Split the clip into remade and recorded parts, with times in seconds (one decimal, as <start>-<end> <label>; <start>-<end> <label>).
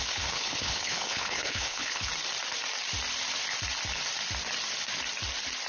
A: 0.0-2.1 remade; 2.1-5.7 recorded